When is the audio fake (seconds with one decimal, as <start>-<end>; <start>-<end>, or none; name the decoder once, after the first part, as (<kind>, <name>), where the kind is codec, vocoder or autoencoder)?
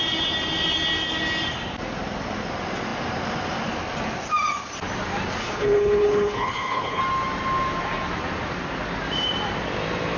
5.4-7.0 (codec, HILCodec)